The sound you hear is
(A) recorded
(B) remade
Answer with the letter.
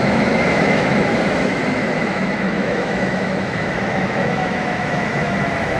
B